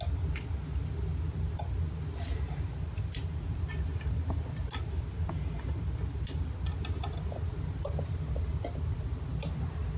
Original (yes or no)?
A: yes